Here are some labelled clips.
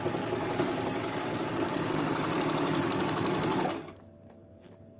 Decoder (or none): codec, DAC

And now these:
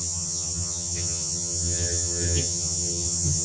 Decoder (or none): vocoder, HiFi-GAN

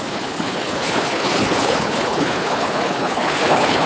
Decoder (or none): codec, HILCodec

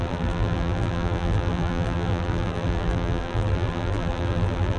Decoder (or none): vocoder, BigVGAN v2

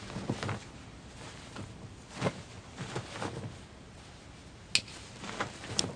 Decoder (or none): none